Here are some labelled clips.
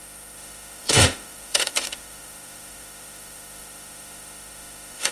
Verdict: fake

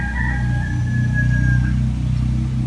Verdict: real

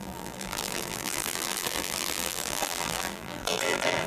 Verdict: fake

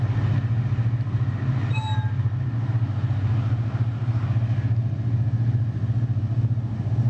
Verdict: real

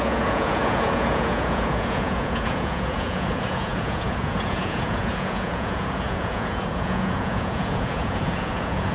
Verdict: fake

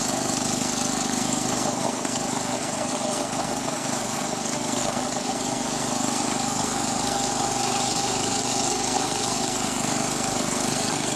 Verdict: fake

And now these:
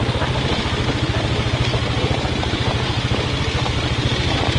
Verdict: real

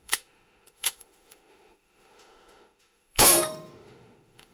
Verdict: fake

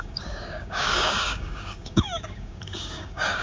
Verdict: fake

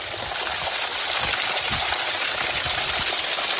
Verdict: real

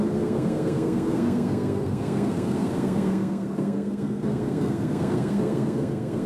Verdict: fake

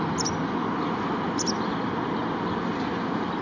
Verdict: real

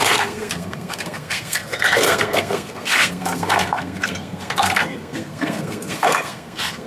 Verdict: fake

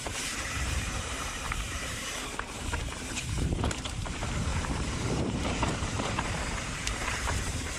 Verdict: fake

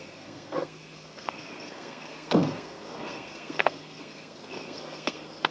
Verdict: fake